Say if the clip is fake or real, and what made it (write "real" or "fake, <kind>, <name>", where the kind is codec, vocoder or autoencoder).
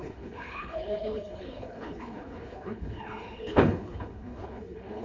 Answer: fake, codec, HILCodec